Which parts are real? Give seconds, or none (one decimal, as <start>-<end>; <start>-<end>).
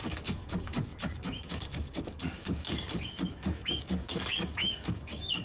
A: none